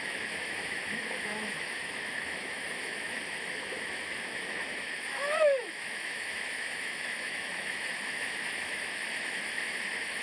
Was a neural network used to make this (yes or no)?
yes